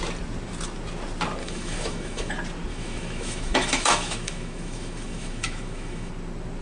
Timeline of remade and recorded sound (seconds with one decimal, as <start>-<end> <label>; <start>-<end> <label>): 0.0-1.4 recorded; 1.4-2.3 remade; 2.3-2.7 recorded; 2.7-6.1 remade; 6.1-6.6 recorded